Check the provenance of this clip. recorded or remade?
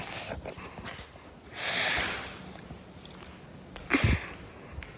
recorded